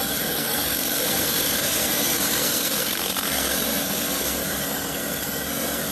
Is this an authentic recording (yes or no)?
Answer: no